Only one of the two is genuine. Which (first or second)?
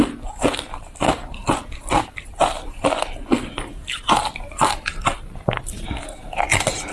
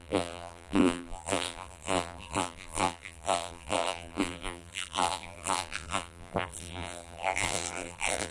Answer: first